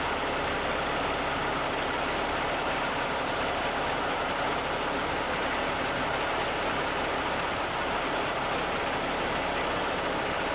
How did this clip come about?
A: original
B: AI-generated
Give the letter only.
A